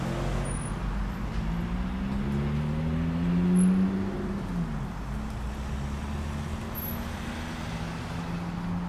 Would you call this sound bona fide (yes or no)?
yes